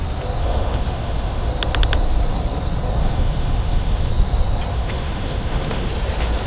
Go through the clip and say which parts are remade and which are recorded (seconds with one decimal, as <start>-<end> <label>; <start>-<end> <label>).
0.0-0.4 recorded; 0.4-1.5 remade; 1.5-3.0 recorded; 3.0-4.1 remade; 4.1-4.7 recorded; 4.7-5.9 remade; 5.9-6.5 recorded